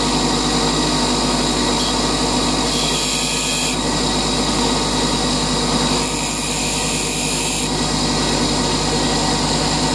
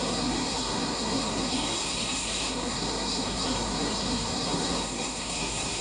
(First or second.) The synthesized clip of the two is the second